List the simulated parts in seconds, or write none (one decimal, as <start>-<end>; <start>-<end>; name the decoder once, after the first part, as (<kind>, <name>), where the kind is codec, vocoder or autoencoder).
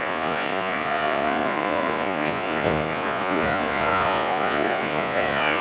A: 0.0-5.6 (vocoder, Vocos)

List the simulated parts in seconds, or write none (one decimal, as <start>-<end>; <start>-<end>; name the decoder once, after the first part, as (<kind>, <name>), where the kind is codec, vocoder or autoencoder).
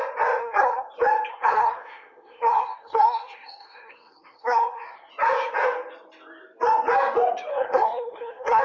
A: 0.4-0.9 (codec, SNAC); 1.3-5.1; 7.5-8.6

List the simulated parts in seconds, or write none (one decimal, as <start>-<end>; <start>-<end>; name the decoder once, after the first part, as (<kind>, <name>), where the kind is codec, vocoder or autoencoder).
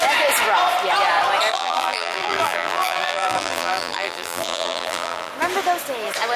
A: 1.5-5.3 (vocoder, BigVGAN v2)